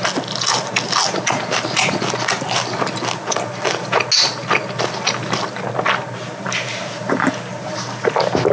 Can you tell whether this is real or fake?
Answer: real